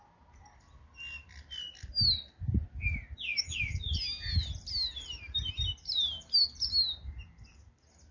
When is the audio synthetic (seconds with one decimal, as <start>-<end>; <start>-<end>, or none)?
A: 3.3-3.8